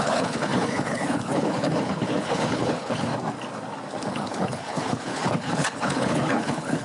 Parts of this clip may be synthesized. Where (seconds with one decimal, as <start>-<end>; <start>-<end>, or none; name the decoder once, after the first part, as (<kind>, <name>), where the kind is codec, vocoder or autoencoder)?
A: 0.0-3.1 (codec, HILCodec); 4.1-6.8